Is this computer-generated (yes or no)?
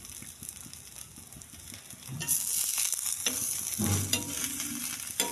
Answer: no